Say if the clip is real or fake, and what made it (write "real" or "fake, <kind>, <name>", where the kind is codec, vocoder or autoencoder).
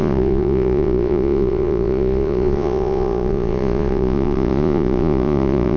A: fake, vocoder, Vocos